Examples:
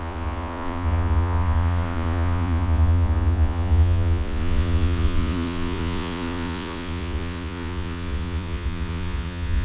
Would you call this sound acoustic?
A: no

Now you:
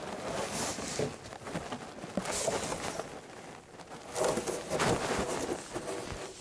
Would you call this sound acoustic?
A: yes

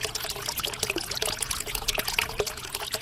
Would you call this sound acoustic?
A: no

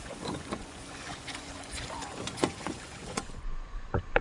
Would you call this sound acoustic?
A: no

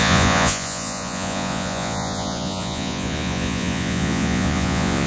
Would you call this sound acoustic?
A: no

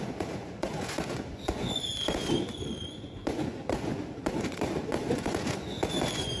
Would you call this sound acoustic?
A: no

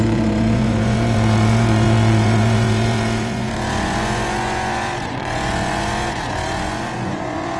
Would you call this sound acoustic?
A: no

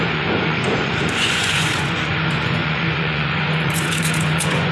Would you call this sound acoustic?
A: no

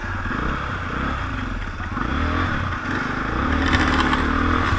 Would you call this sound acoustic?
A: yes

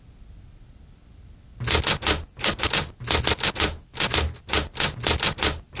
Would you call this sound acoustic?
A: yes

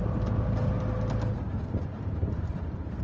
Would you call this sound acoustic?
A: yes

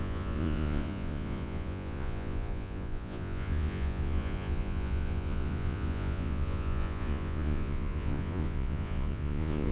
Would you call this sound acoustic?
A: no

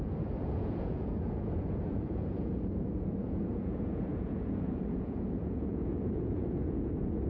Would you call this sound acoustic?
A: no